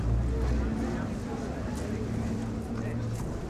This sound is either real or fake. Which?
real